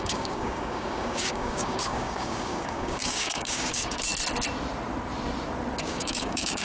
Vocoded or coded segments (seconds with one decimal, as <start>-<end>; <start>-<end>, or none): 0.0-4.1; 5.8-6.6